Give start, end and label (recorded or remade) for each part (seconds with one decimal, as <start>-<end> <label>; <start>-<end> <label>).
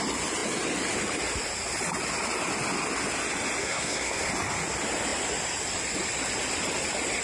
0.0-3.6 recorded; 3.6-4.3 remade; 4.3-7.2 recorded